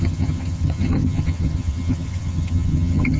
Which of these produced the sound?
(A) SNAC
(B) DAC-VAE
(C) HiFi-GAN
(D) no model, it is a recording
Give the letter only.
C